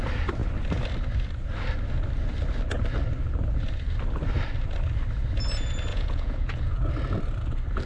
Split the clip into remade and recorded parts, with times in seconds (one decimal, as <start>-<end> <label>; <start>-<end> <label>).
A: 0.0-5.9 recorded; 5.9-6.9 remade; 6.9-7.9 recorded